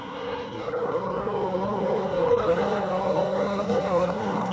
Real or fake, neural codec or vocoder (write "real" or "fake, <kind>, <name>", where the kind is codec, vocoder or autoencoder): fake, codec, SNAC